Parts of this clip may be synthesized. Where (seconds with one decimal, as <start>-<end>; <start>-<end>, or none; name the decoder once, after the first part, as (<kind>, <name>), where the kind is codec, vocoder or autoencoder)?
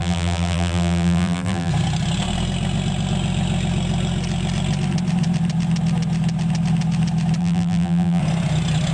0.0-1.7 (vocoder, BigVGAN v2); 7.4-8.2